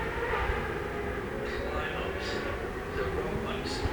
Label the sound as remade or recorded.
recorded